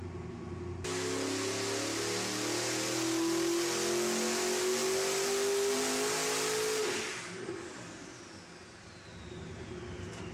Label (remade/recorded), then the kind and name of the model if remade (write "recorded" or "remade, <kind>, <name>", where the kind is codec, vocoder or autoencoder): recorded